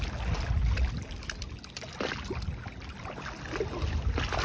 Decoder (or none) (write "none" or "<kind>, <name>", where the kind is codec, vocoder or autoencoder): none